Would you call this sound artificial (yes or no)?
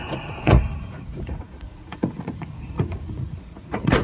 yes